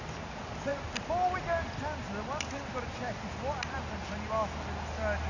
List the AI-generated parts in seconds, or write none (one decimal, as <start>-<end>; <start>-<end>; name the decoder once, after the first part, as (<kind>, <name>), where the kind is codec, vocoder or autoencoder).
none